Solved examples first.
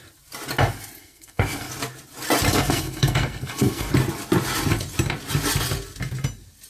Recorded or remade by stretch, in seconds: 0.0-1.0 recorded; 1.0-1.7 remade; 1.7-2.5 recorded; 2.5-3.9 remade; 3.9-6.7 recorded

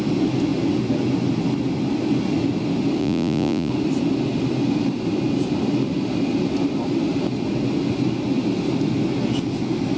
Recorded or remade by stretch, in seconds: 0.0-3.0 recorded; 3.0-3.7 remade; 3.7-10.0 recorded

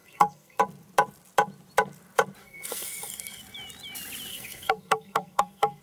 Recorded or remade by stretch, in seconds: 0.0-0.6 remade; 0.6-2.4 recorded; 2.4-3.4 remade; 3.4-4.3 recorded; 4.3-5.8 remade

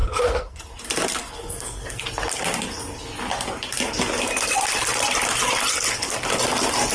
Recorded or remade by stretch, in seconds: 0.0-0.6 remade; 0.6-1.2 recorded; 1.2-2.0 remade; 2.0-6.9 recorded